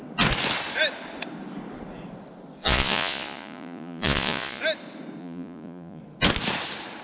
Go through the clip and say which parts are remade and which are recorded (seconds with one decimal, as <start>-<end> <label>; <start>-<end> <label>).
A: 0.0-2.6 recorded; 2.6-4.6 remade; 4.6-5.2 recorded; 5.2-6.0 remade; 6.0-7.0 recorded